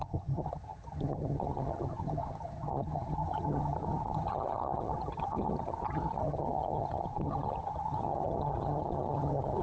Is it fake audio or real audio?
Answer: fake